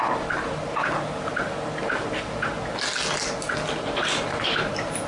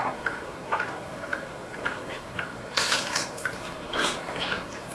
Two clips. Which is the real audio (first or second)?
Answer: first